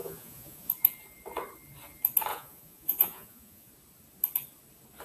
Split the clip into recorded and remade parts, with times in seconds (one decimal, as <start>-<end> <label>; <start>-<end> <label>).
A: 0.0-0.7 remade; 0.7-2.3 recorded; 2.3-3.7 remade; 3.7-5.0 recorded